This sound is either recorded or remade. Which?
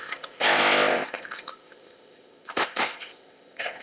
remade